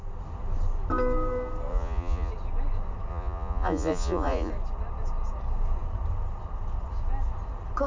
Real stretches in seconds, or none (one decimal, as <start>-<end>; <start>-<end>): 0.0-1.7; 2.3-3.1; 4.5-7.9